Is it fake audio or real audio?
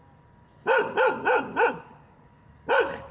real